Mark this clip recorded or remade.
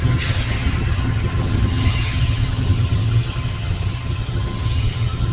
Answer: remade